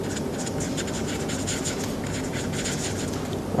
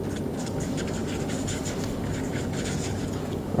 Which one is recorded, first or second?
first